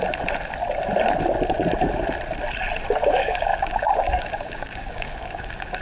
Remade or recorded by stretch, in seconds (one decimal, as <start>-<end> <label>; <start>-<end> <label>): 0.0-3.1 recorded; 3.1-5.8 remade